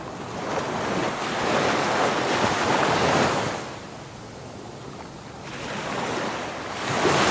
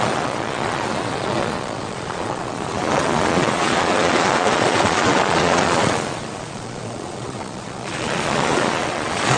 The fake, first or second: second